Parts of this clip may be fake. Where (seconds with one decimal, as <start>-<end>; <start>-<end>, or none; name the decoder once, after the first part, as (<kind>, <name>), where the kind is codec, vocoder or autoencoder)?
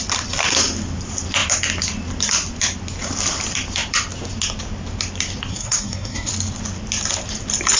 5.5-6.3 (codec, SNAC)